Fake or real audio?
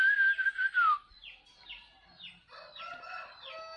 real